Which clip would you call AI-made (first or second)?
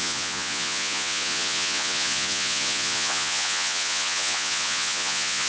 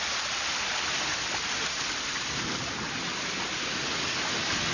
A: first